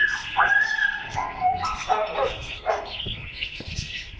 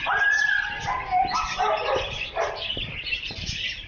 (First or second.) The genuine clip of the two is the second